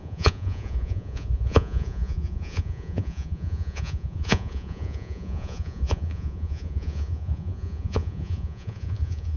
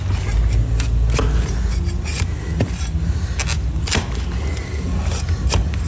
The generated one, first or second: first